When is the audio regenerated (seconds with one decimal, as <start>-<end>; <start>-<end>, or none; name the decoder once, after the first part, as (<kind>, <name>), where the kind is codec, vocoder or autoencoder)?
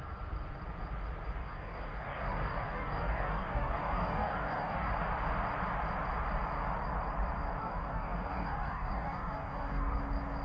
1.4-4.9 (codec, DAC); 7.6-10.0